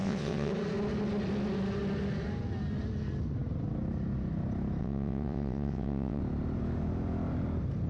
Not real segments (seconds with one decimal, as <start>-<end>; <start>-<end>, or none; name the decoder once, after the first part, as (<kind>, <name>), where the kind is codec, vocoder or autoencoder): 0.0-0.5 (vocoder, WaveNeXt); 4.8-6.2

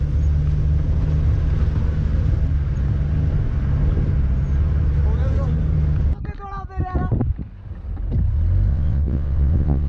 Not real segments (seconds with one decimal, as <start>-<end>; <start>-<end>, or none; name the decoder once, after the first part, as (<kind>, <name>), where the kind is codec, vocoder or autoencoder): 8.7-9.9 (vocoder, WaveNeXt)